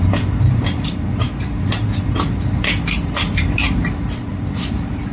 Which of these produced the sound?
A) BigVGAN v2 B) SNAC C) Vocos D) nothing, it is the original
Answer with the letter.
A